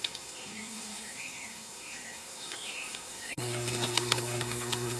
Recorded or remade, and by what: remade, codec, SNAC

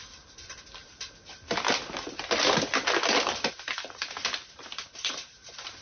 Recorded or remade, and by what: recorded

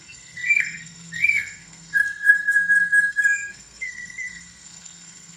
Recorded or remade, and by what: remade, codec, SNAC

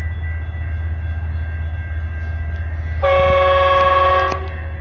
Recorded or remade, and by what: recorded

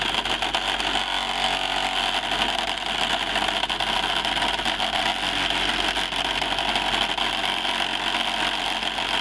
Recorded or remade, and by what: recorded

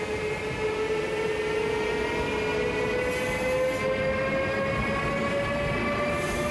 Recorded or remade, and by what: recorded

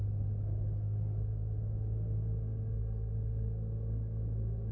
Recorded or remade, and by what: remade, codec, SNAC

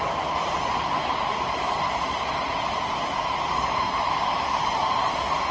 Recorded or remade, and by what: recorded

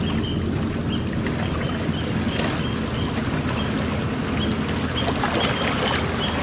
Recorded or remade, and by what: recorded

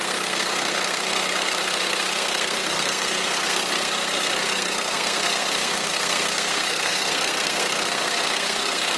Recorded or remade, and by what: remade, codec, SNAC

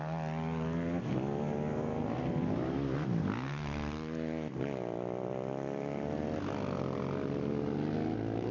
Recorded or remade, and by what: recorded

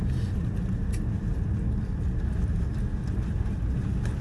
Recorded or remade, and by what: recorded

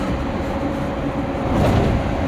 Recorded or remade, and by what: recorded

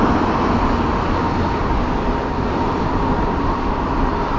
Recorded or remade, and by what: recorded